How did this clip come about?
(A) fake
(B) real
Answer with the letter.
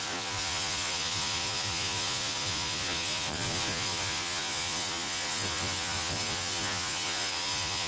A